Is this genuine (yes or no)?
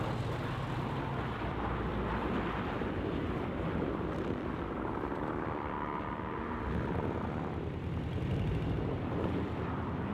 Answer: no